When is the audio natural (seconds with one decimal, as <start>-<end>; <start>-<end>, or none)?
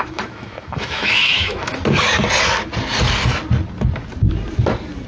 1.7-5.1